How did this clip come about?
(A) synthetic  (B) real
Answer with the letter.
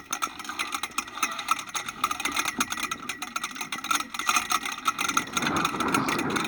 B